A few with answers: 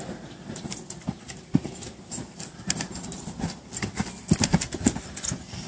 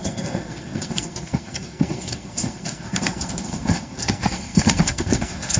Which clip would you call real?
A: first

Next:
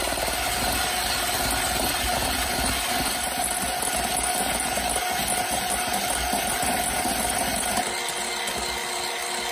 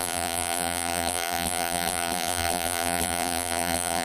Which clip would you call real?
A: first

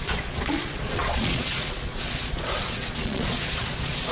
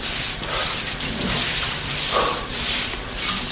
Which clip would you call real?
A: second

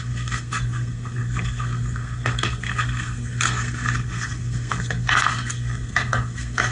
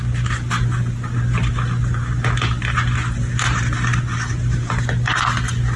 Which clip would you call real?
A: second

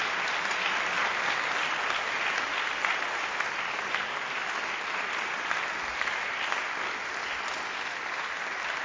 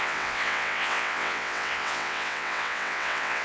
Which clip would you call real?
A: first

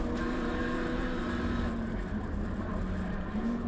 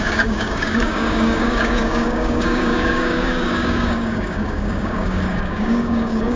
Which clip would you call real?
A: first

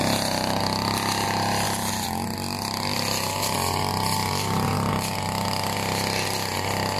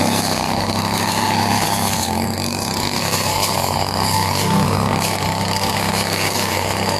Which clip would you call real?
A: first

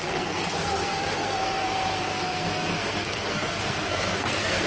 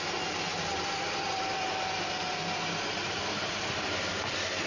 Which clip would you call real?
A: second